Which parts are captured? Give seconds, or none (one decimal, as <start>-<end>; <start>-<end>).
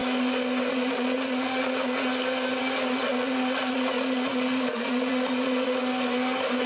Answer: 0.0-0.7; 2.1-2.6; 5.8-6.7